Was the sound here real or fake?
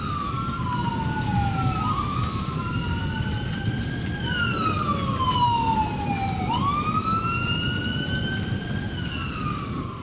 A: real